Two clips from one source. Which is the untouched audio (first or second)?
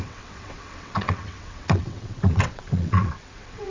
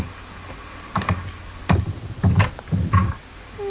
second